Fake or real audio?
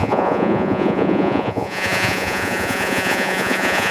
fake